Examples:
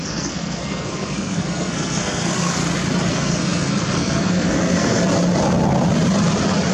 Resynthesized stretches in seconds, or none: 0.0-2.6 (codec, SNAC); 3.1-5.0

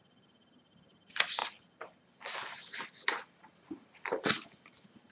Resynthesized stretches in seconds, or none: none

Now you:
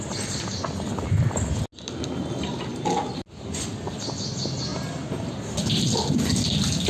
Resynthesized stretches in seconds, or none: none

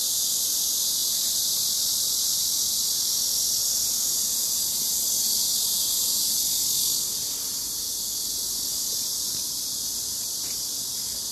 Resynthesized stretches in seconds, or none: none